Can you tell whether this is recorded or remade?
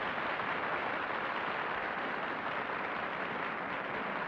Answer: remade